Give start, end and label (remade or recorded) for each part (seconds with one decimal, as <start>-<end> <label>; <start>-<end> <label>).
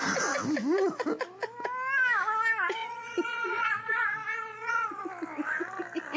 0.0-2.8 recorded; 2.8-4.1 remade; 4.1-4.5 recorded; 4.5-5.0 remade; 5.0-6.2 recorded